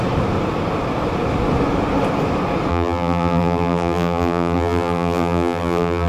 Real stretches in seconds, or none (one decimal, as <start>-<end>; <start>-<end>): 0.0-2.7